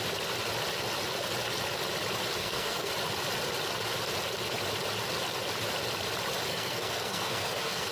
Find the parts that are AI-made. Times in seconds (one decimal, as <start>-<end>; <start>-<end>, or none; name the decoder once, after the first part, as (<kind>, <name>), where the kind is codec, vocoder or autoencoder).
2.4-2.9 (codec, SNAC); 6.5-7.9

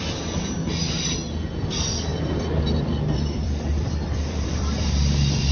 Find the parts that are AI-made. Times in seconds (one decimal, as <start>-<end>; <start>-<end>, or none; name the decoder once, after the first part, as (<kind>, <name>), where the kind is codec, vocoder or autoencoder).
2.1-5.5 (vocoder, BigVGAN v2)

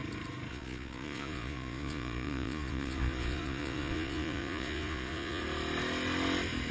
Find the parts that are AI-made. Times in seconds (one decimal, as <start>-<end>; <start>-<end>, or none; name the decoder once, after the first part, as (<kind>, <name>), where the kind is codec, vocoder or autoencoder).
0.5-5.4 (vocoder, Vocos)